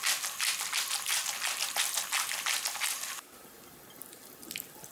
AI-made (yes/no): no